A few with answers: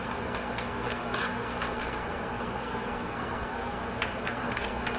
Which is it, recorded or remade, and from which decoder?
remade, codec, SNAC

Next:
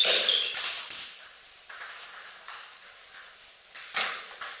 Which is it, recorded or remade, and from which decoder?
recorded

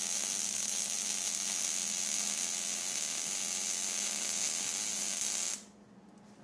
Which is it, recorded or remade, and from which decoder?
recorded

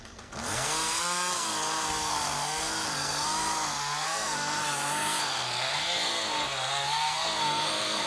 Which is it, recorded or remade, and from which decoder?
remade, codec, SNAC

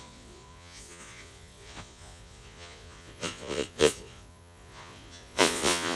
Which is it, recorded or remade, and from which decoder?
remade, vocoder, Vocos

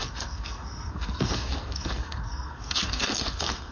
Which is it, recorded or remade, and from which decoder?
remade, codec, SNAC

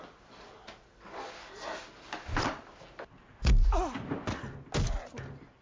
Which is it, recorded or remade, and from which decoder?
recorded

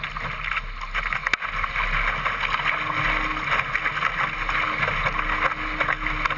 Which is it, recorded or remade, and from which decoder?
recorded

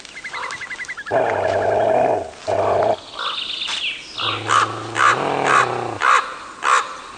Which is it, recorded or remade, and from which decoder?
recorded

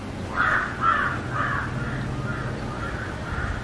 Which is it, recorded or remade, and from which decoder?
recorded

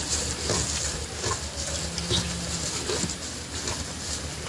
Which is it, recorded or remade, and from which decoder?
recorded